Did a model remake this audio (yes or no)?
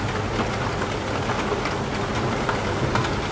no